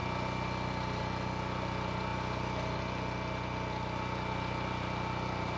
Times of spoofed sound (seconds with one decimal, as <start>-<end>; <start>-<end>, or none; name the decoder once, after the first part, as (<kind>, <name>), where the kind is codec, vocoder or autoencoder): none